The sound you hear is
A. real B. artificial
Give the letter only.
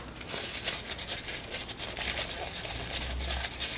A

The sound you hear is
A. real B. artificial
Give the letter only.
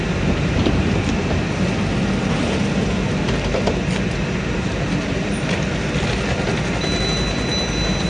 A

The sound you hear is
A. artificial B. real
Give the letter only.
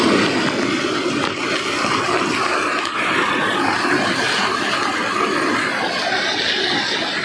B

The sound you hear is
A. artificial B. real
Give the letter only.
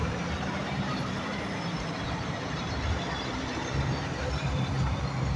A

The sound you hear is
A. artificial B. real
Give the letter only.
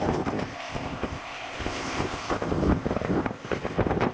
A